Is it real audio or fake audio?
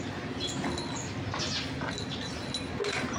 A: real